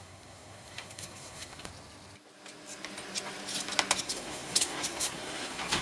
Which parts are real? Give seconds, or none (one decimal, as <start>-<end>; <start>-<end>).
1.7-4.0